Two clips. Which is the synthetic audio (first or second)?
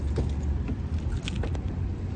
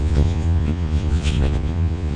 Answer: second